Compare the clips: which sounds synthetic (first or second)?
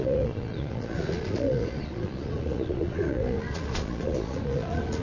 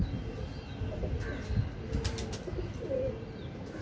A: first